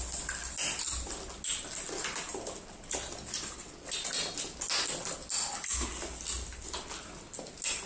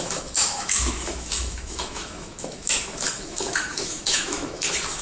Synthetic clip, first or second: second